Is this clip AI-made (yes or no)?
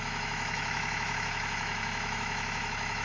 yes